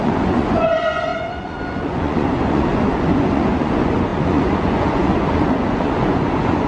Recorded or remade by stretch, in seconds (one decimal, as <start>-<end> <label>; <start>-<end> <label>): 0.0-6.7 remade